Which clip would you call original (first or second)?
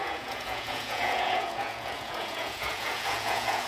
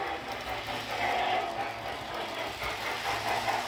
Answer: second